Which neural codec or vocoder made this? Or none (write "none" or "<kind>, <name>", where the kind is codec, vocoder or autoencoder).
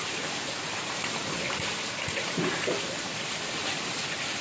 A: none